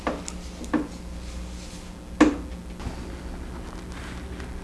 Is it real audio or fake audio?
real